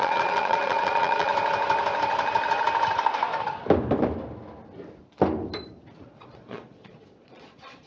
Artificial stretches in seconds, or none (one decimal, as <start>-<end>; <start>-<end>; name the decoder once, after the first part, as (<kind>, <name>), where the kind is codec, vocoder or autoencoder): 0.0-1.3 (vocoder, Vocos); 6.0-7.9